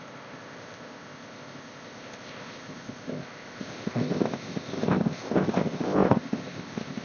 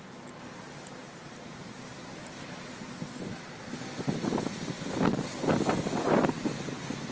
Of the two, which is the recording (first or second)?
second